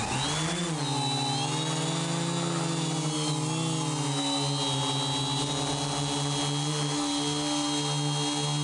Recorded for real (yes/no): yes